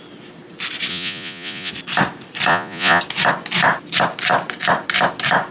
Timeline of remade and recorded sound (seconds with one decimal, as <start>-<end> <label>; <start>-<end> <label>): 0.0-0.9 recorded; 0.9-1.7 remade; 1.7-2.5 recorded; 2.5-3.0 remade; 3.0-5.5 recorded